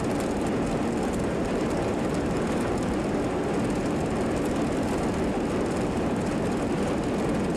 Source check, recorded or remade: recorded